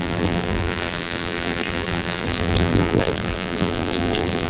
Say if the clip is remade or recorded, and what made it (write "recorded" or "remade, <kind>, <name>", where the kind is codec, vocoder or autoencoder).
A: remade, vocoder, BigVGAN v2